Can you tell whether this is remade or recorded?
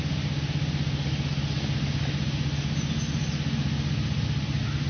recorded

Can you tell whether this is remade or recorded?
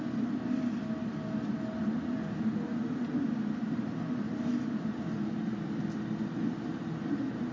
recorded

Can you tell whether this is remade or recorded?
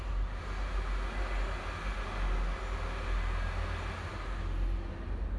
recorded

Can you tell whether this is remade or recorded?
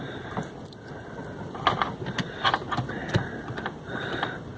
recorded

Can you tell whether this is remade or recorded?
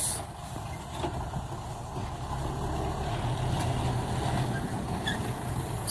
recorded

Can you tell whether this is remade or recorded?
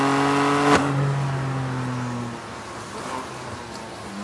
recorded